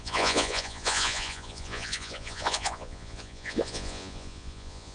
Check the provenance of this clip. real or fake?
fake